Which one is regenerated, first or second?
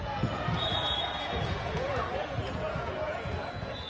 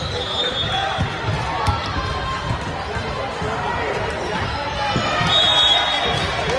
first